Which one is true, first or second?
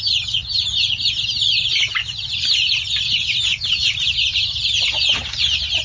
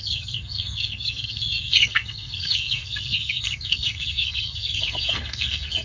first